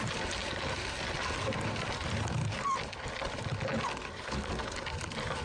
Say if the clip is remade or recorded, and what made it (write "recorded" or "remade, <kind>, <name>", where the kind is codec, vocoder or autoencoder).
recorded